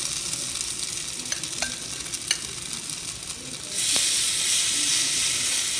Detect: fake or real real